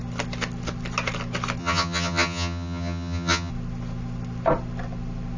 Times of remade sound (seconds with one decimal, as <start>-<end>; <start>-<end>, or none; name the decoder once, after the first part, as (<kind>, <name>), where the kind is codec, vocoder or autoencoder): 1.6-3.5 (vocoder, HiFi-GAN)

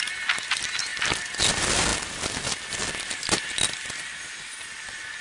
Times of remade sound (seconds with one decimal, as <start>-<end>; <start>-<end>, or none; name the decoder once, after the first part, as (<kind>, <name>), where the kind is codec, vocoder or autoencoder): 0.9-1.5 (vocoder, BigVGAN v2)

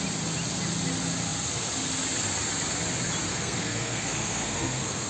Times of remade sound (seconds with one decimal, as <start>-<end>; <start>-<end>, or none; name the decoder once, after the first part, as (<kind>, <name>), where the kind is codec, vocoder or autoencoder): 3.3-5.1 (codec, SNAC)

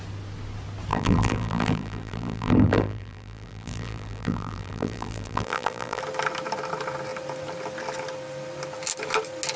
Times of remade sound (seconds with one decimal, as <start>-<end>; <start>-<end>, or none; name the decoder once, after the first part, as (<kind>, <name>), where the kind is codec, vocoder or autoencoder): 0.9-6.0 (vocoder, BigVGAN v2)

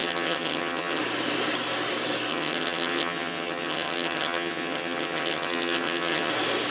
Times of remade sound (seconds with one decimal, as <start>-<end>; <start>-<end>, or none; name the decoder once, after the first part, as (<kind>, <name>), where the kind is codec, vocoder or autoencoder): 0.0-1.0 (vocoder, HiFi-GAN); 2.3-6.3

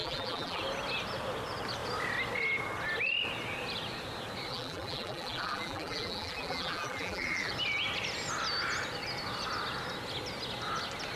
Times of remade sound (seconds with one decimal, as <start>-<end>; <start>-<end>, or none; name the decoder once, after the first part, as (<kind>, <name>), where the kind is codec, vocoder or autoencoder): 0.0-0.6 (vocoder, BigVGAN v2); 4.5-7.5